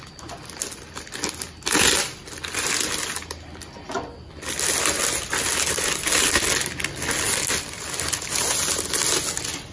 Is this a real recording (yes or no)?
yes